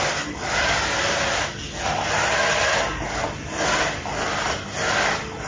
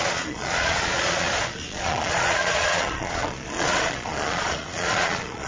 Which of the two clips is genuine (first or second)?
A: first